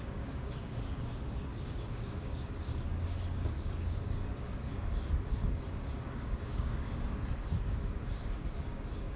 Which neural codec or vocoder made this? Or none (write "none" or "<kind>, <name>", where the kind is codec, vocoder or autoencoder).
codec, DAC